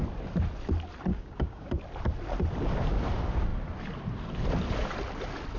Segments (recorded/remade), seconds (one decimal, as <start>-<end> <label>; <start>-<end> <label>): 0.0-1.1 recorded; 1.1-1.7 remade; 1.7-5.6 recorded